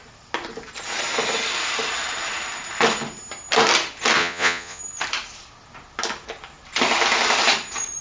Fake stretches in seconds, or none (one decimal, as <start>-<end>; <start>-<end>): 4.2-4.8